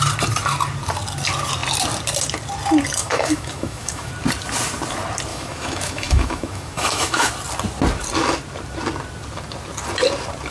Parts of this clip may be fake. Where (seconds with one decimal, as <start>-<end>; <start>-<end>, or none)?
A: 3.0-4.1; 5.3-7.3